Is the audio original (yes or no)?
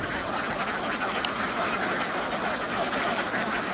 yes